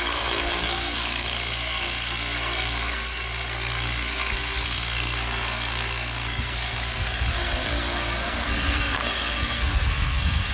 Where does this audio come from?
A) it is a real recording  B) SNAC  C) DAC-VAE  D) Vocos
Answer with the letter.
B